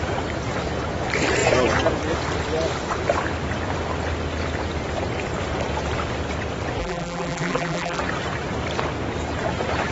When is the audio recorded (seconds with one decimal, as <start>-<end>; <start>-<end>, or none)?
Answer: 0.0-6.8; 8.0-9.9